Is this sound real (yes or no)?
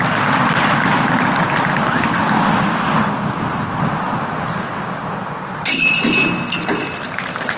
yes